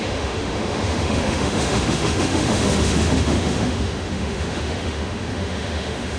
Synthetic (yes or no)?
yes